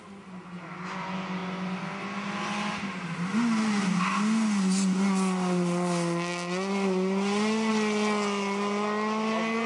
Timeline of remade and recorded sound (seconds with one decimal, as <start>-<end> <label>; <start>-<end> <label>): 0.0-9.7 recorded